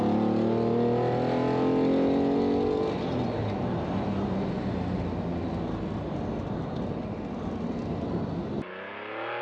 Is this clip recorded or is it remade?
recorded